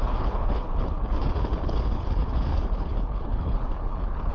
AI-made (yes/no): yes